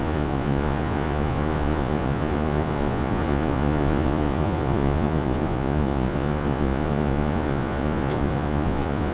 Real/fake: fake